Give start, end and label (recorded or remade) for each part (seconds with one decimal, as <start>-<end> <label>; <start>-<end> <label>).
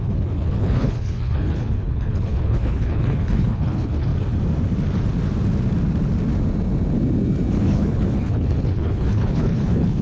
0.0-4.1 remade; 4.1-7.6 recorded; 7.6-10.0 remade